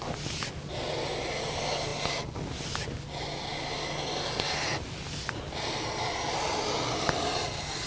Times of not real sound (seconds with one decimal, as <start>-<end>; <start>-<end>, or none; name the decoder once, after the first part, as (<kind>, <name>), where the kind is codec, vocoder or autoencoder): none